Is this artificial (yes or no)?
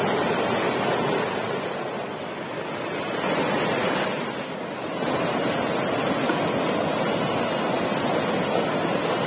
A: no